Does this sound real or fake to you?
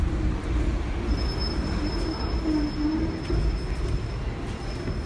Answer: real